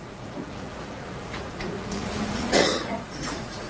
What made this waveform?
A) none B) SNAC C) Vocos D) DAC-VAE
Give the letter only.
C